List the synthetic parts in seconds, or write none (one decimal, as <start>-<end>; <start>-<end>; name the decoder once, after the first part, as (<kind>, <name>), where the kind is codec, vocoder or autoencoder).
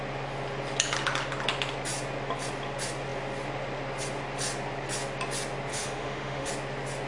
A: 5.7-6.5 (autoencoder, DAC-VAE)